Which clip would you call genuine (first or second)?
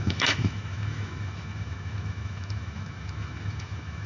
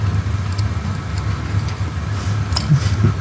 second